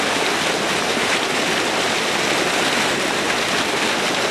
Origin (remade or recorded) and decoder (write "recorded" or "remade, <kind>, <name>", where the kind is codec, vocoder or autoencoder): recorded